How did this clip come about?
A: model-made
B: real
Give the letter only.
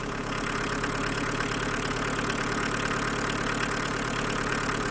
A